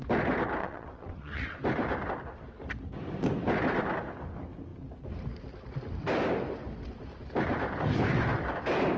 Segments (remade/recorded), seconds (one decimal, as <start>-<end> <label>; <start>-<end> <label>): 0.0-0.6 recorded; 0.6-1.6 remade; 1.6-9.0 recorded